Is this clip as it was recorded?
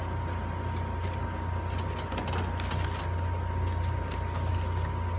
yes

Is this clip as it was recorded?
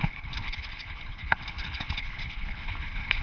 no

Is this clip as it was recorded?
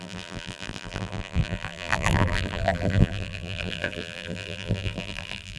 no